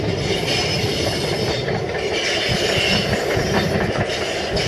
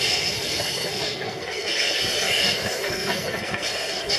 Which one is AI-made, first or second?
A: second